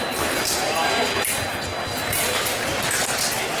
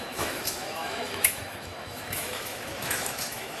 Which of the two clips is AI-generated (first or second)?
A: second